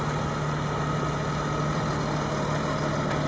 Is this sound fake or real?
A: real